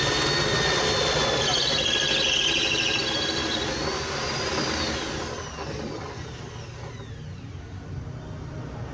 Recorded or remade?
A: recorded